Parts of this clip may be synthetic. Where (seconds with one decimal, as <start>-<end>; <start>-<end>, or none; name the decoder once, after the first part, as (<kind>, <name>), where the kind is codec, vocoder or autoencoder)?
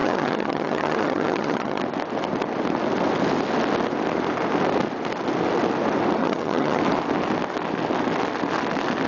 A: 0.0-1.8 (vocoder, HiFi-GAN); 6.2-6.8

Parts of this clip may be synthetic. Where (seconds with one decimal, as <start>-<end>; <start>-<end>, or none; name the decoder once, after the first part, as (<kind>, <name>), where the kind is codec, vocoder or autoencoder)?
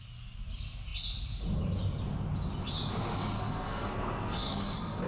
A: 3.1-5.1 (codec, SNAC)